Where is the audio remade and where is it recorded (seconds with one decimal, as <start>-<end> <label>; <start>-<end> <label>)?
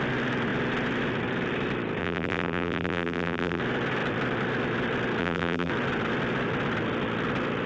0.0-2.0 recorded; 2.0-3.6 remade; 3.6-5.2 recorded; 5.2-5.7 remade; 5.7-7.7 recorded